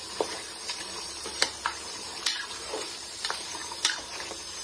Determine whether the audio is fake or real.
fake